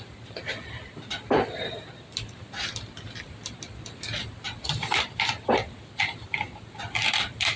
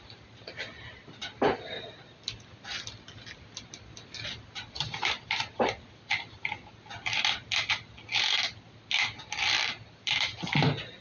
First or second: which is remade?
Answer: first